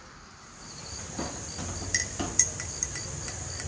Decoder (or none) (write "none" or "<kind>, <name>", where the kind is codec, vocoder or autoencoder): none